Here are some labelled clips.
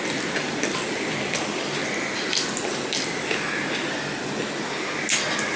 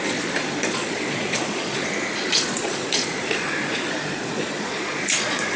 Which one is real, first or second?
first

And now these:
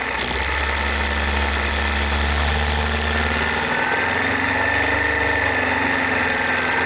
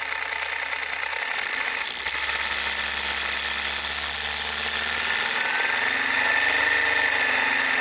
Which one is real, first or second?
second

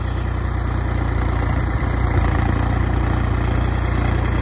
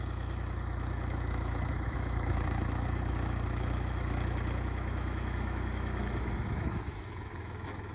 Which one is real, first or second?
first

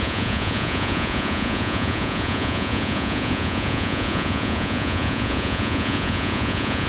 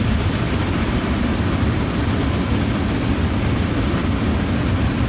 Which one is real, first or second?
second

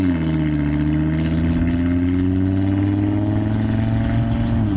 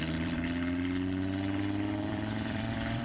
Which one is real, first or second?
first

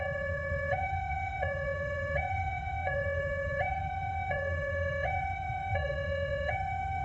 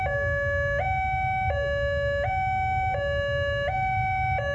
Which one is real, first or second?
second